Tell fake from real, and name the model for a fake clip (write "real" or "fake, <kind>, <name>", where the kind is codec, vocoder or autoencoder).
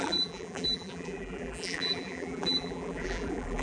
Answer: fake, vocoder, BigVGAN v2